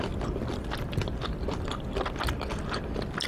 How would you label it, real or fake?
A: fake